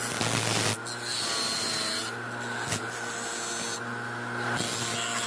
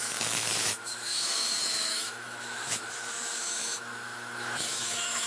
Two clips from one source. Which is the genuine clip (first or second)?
first